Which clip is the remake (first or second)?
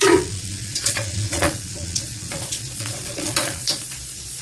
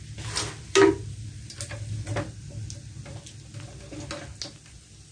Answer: first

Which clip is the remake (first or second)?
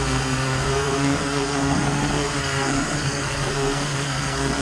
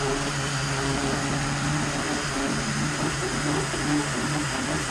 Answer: first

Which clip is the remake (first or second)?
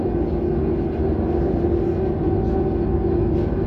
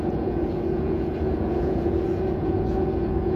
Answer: second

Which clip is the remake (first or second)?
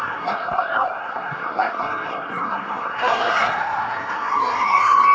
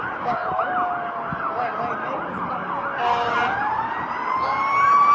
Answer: first